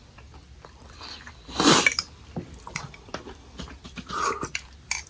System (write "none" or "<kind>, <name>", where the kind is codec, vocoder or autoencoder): none